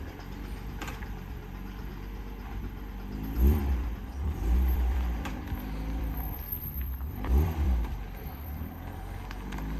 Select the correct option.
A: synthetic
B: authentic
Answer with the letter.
A